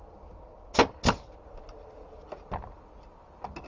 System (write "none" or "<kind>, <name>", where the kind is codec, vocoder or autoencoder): none